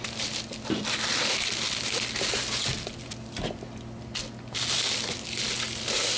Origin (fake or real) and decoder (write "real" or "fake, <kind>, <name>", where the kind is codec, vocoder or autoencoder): real